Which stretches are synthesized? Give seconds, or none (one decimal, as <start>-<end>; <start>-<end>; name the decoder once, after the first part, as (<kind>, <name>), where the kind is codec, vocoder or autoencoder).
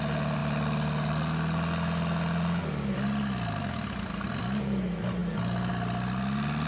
none